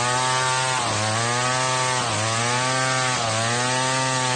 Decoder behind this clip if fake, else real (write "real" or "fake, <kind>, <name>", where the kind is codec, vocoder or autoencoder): real